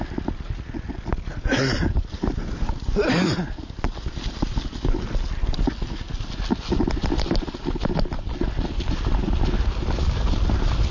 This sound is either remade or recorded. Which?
recorded